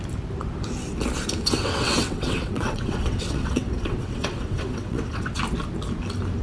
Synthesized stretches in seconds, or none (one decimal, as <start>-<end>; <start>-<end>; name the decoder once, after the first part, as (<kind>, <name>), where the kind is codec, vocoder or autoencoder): 1.6-5.4 (vocoder, WaveNeXt)